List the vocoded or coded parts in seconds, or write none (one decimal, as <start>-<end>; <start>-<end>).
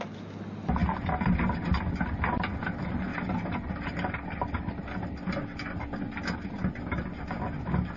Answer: none